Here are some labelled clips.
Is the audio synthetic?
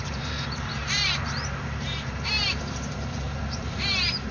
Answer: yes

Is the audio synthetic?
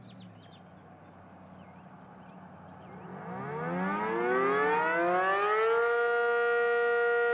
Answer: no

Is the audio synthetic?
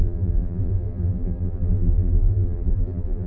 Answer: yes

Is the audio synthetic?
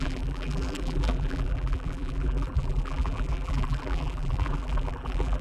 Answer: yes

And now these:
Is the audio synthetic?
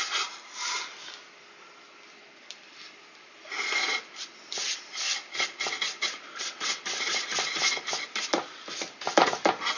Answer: no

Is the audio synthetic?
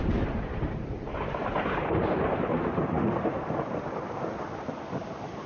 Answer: yes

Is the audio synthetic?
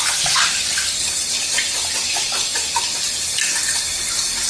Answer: no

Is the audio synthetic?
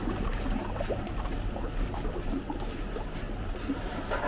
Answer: yes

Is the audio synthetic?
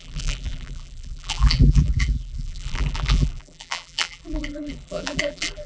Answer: yes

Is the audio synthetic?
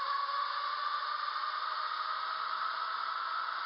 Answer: no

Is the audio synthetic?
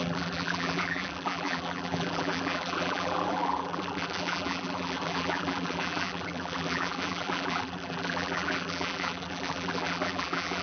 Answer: yes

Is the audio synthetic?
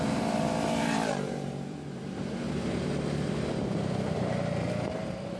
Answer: yes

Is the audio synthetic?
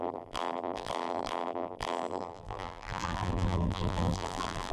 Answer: yes